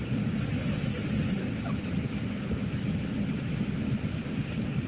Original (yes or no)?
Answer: yes